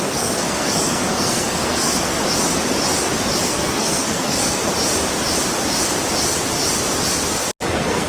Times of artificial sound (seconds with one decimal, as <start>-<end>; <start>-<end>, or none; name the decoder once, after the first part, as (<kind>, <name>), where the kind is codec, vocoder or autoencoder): 0.0-2.2 (codec, SNAC); 3.4-4.7; 7.6-8.1